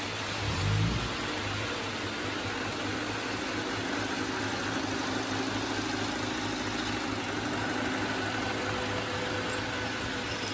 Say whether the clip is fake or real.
real